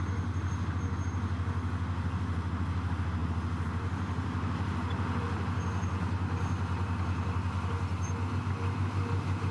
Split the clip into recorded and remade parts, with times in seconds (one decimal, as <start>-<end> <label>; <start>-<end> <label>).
0.0-9.5 recorded